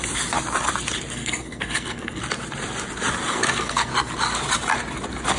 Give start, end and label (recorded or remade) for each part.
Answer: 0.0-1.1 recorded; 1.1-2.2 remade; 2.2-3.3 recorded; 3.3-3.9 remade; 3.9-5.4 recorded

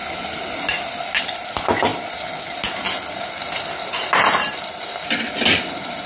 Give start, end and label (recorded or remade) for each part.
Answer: 0.0-6.1 recorded

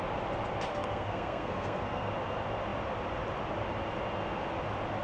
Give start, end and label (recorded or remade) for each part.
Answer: 0.0-0.7 recorded; 0.7-2.1 remade; 2.1-5.0 recorded

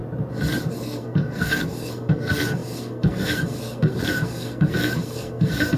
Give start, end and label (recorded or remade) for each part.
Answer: 0.0-0.7 recorded; 0.7-5.8 remade

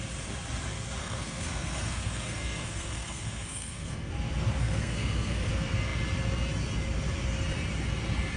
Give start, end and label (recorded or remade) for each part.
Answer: 0.0-1.0 recorded; 1.0-4.1 remade; 4.1-4.6 recorded; 4.6-5.5 remade; 5.5-8.4 recorded

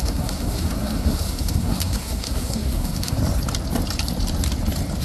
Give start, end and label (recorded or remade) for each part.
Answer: 0.0-3.2 remade; 3.2-5.0 recorded